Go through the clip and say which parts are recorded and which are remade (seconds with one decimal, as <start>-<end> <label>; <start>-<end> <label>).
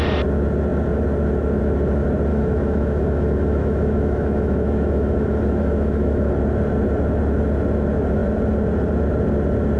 0.0-2.3 recorded; 2.3-6.3 remade; 6.3-9.8 recorded